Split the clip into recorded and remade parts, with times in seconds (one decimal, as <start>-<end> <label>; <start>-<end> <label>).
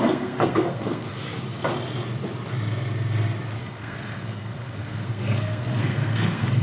0.0-1.1 remade; 1.1-3.6 recorded; 3.6-6.6 remade